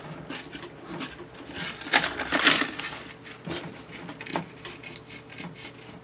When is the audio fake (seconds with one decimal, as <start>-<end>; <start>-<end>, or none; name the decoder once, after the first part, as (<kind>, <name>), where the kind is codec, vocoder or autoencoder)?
4.3-5.0 (vocoder, BigVGAN v2)